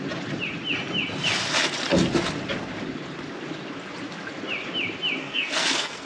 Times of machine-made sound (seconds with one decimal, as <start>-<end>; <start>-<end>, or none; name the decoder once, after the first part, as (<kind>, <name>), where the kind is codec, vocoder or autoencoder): 5.2-6.1 (codec, SNAC)

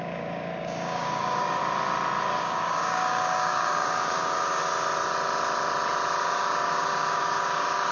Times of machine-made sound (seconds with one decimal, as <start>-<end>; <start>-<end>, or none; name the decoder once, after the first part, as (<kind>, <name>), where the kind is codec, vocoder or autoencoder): 0.0-1.6 (codec, DAC); 2.4-4.7; 6.2-7.9

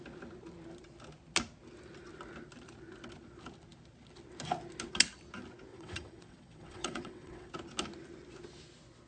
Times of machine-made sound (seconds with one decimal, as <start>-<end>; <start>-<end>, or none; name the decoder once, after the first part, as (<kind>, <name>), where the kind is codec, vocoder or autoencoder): 5.7-7.5 (vocoder, WaveNeXt)

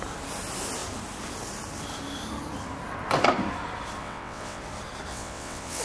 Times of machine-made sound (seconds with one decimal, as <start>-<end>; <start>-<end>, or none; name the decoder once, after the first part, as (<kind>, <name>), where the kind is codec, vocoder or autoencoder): 4.0-4.6 (vocoder, WaveNeXt); 5.1-5.8

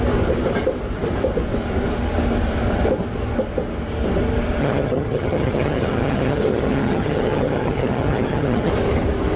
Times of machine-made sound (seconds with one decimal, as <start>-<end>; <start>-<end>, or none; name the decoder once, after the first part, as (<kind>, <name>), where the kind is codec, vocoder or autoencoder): 4.6-8.7 (vocoder, HiFi-GAN)